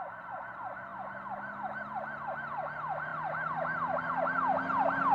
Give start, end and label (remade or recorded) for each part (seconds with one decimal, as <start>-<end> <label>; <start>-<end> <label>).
0.0-0.9 remade; 0.9-2.3 recorded; 2.3-5.1 remade